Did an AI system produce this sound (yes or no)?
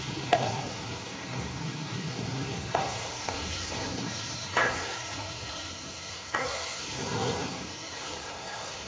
yes